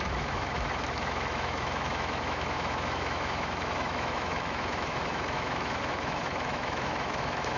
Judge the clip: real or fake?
fake